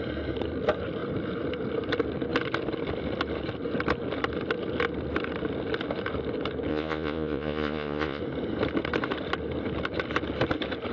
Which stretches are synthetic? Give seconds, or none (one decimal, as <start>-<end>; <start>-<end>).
6.7-8.2